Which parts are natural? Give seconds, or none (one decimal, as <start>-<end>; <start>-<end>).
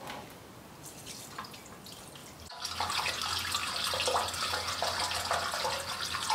0.0-2.2; 2.9-6.3